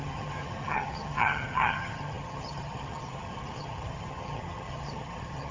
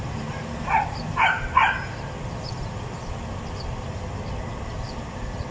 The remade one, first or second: first